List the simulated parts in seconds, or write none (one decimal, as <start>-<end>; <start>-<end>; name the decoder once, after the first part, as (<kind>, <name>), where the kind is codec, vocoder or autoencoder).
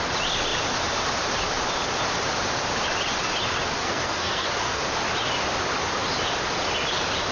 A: 3.8-4.8 (codec, SNAC)